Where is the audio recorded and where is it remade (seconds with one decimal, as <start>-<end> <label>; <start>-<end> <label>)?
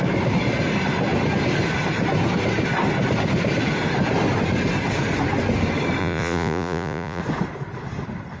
0.0-6.0 recorded; 6.0-7.2 remade; 7.2-8.4 recorded